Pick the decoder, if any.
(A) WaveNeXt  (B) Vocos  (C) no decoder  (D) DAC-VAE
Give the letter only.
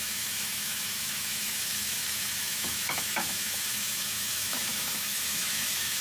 D